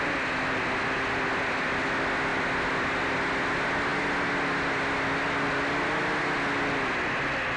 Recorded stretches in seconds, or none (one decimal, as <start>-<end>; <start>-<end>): 0.0-7.6